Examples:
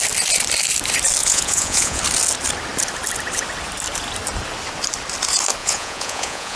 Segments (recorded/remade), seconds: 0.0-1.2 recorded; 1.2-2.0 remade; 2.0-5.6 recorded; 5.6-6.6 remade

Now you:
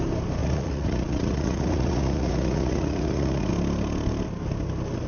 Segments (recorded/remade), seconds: 0.0-0.4 recorded; 0.4-3.5 remade; 3.5-5.1 recorded

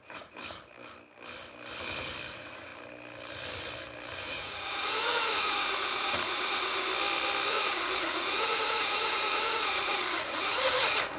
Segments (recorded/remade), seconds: 0.0-0.4 remade; 0.4-2.3 recorded; 2.3-2.7 remade; 2.7-4.2 recorded; 4.2-6.9 remade; 6.9-7.5 recorded; 7.5-11.2 remade

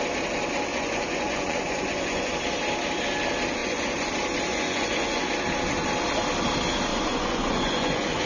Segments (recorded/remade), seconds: 0.0-0.7 recorded; 0.7-2.3 remade; 2.3-3.6 recorded; 3.6-4.1 remade; 4.1-4.5 recorded; 4.5-5.2 remade; 5.2-6.9 recorded; 6.9-8.3 remade

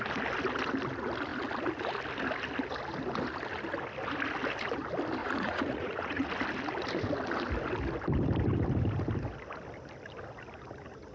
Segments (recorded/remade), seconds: 0.0-5.2 recorded; 5.2-6.3 remade; 6.3-11.1 recorded